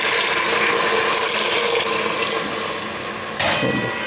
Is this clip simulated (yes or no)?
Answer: no